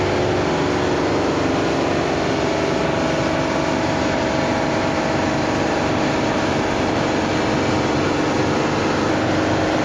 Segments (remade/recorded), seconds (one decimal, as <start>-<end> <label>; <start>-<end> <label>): 0.0-9.8 recorded